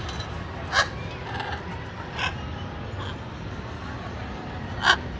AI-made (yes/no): no